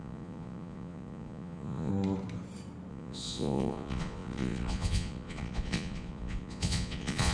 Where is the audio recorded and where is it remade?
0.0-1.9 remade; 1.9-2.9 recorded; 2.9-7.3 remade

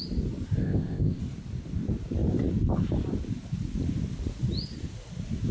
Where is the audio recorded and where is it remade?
0.0-0.6 recorded; 0.6-1.2 remade; 1.2-5.5 recorded

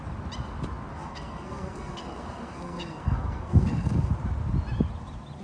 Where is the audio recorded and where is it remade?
0.0-0.9 recorded; 0.9-4.1 remade; 4.1-5.4 recorded

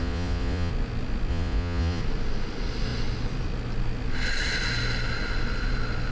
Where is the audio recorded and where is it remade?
0.0-0.7 remade; 0.7-1.3 recorded; 1.3-2.0 remade; 2.0-6.1 recorded

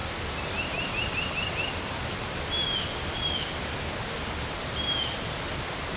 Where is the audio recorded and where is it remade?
0.0-6.0 recorded